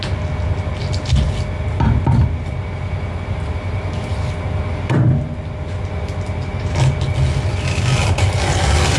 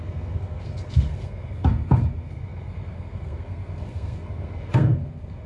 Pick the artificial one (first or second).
second